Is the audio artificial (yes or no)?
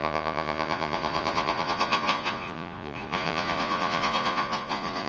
yes